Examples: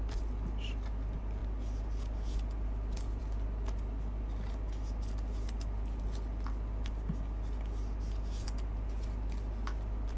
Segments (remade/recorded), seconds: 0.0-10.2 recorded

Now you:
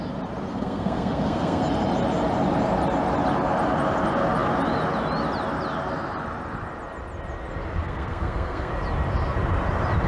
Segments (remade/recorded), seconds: 0.0-0.5 recorded; 0.5-1.6 remade; 1.6-7.8 recorded; 7.8-8.7 remade; 8.7-10.1 recorded

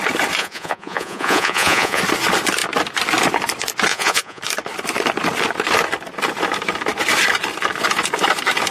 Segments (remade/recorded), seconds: 0.0-0.4 recorded; 0.4-2.0 remade; 2.0-3.9 recorded; 3.9-4.4 remade; 4.4-8.7 recorded

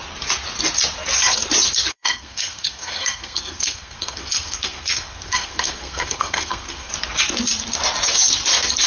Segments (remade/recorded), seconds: 0.0-1.9 recorded; 1.9-6.9 remade; 6.9-8.9 recorded

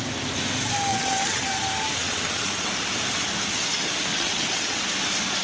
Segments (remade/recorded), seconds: 0.0-0.9 recorded; 0.9-1.5 remade; 1.5-2.0 recorded; 2.0-2.7 remade; 2.7-4.1 recorded; 4.1-4.8 remade; 4.8-5.4 recorded

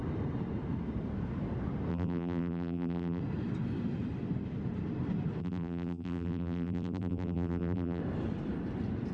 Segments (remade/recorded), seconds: 0.0-1.9 recorded; 1.9-3.2 remade; 3.2-5.4 recorded; 5.4-8.0 remade; 8.0-9.1 recorded